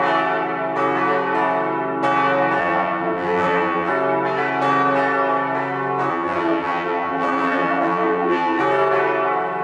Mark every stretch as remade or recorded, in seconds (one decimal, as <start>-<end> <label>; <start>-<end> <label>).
0.0-2.6 recorded; 2.6-3.9 remade; 3.9-6.1 recorded; 6.1-8.6 remade; 8.6-9.6 recorded